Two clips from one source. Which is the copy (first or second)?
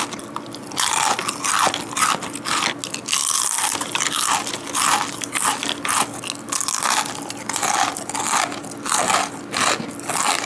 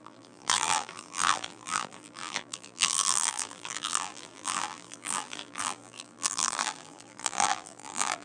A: second